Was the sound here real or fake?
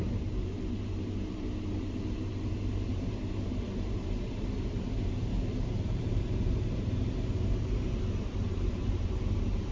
fake